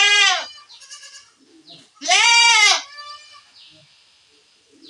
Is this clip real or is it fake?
fake